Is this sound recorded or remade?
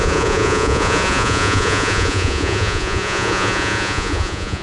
remade